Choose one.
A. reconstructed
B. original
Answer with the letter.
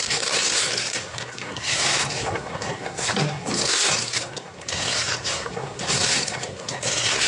A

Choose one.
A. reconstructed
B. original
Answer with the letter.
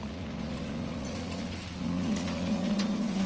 A